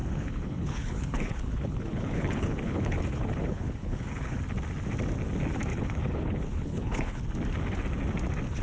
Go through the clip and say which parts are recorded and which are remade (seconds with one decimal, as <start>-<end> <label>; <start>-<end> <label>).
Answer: 0.0-4.4 remade; 4.4-5.7 recorded; 5.7-7.2 remade; 7.2-8.6 recorded